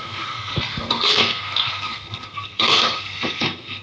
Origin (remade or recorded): remade